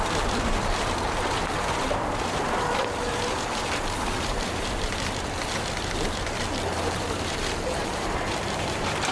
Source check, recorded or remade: remade